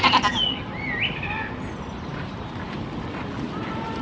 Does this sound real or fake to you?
real